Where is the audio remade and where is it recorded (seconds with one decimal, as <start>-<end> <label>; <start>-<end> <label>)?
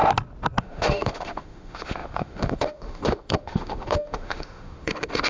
0.0-0.6 recorded; 0.6-5.3 remade